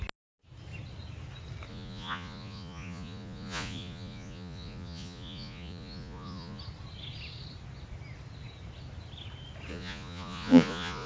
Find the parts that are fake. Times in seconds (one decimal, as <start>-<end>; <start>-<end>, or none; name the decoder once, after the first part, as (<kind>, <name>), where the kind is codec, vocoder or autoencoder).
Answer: 1.7-6.6 (vocoder, Vocos); 9.7-11.1